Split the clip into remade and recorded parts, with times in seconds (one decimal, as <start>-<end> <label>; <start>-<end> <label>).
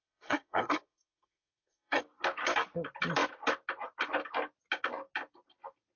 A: 0.0-2.0 remade; 2.0-6.0 recorded